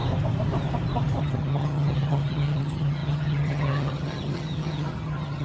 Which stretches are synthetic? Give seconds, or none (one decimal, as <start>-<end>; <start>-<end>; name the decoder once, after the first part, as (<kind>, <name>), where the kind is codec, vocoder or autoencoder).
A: 1.2-5.4 (vocoder, HiFi-GAN)